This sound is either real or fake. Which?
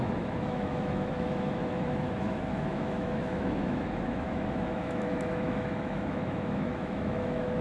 fake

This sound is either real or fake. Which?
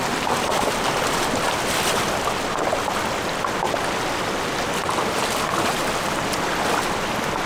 real